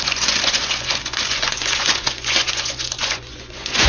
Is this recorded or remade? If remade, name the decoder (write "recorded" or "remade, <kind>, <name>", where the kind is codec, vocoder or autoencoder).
remade, vocoder, Vocos